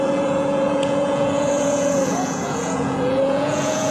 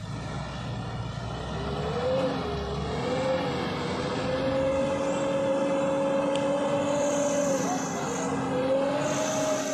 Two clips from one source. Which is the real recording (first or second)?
second